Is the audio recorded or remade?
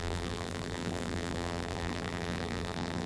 remade